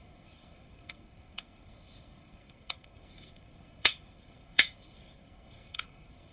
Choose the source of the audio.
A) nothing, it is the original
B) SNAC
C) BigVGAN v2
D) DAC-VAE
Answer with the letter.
B